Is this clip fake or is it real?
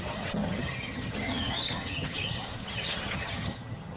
fake